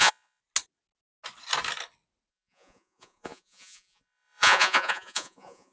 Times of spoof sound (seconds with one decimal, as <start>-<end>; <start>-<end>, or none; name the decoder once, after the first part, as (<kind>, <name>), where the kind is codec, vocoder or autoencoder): 0.0-0.4 (vocoder, Vocos); 2.3-5.7